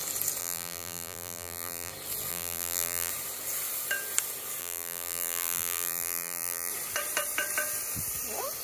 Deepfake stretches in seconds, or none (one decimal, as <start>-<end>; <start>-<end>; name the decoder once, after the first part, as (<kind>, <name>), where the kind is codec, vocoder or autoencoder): 0.4-1.9 (vocoder, BigVGAN v2); 2.3-3.1; 4.6-6.7

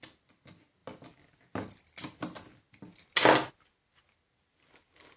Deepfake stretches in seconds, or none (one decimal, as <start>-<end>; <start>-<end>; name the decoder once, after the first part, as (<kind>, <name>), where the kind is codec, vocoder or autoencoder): none